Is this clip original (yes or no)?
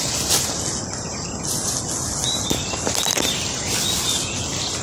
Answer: yes